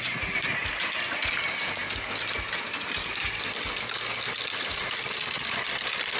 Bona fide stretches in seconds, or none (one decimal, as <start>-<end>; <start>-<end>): 0.0-6.2